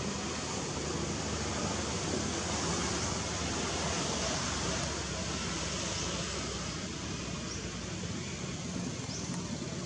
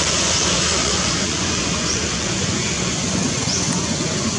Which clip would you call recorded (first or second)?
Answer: first